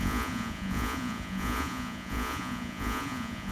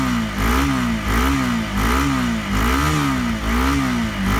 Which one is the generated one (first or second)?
first